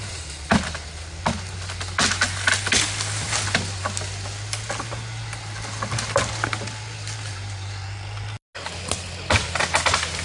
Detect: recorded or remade recorded